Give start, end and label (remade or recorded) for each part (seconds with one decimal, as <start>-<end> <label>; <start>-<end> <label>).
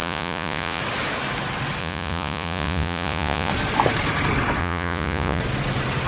0.0-0.8 remade; 0.8-1.8 recorded; 1.8-3.5 remade; 3.5-4.6 recorded; 4.6-5.4 remade; 5.4-6.1 recorded